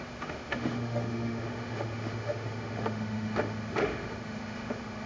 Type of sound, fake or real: fake